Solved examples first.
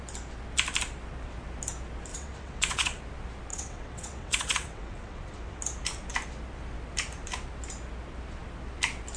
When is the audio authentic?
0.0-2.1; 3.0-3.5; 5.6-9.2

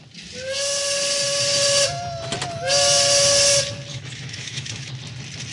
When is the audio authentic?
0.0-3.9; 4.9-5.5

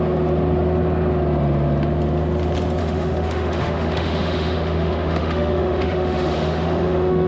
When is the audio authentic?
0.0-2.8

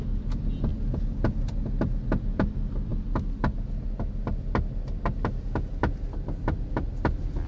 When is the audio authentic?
0.0-7.5